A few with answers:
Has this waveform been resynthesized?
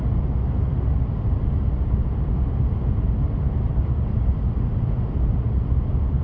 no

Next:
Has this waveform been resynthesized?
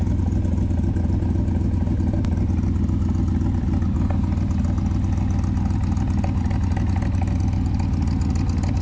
no